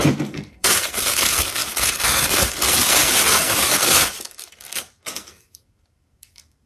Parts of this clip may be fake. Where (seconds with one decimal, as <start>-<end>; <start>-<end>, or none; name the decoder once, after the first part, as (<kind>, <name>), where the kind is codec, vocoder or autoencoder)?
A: 0.0-6.7 (codec, SNAC)